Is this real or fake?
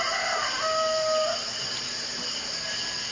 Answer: real